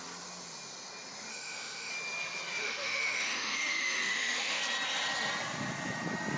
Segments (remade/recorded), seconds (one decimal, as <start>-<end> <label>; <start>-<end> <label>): 0.0-1.3 recorded; 1.3-1.9 remade; 1.9-2.6 recorded; 2.6-4.6 remade; 4.6-6.4 recorded